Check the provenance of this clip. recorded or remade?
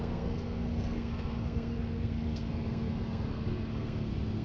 remade